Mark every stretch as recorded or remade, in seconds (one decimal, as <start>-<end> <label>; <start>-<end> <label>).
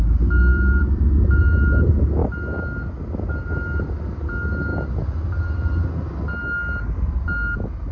0.0-0.4 recorded; 0.4-1.4 remade; 1.4-7.9 recorded